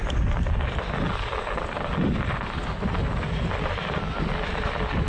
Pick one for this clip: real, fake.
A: real